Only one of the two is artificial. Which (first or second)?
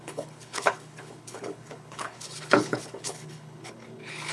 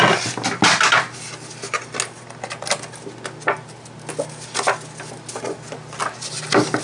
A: first